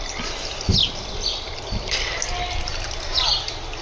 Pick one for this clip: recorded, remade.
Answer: recorded